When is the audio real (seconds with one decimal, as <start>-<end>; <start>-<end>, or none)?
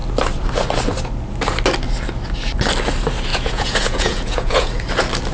0.0-3.3; 4.7-5.3